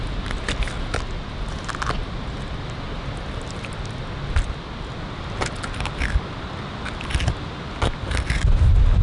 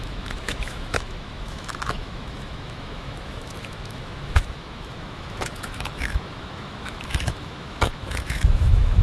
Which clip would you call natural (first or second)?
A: first